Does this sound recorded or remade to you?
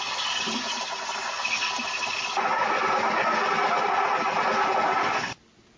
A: recorded